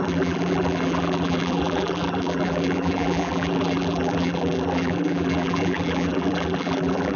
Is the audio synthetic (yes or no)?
yes